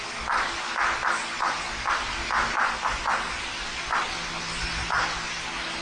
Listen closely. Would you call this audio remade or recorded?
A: recorded